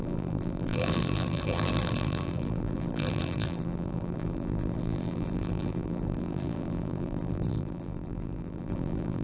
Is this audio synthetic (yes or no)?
yes